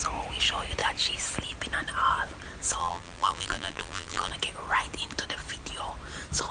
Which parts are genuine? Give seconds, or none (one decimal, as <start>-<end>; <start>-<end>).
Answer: 0.0-2.8; 4.3-6.5

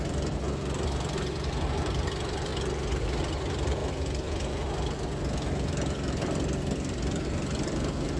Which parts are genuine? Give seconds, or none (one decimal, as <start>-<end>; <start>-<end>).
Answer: 2.5-3.2

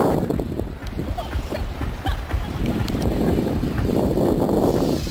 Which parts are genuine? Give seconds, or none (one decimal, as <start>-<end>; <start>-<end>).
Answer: 0.0-1.0; 4.1-5.1

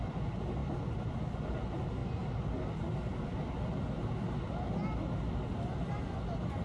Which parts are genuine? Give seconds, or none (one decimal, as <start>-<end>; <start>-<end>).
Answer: 0.0-6.6

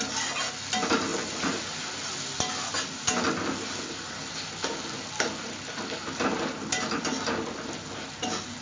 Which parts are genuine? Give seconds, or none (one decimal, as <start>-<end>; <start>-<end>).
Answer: 0.0-8.6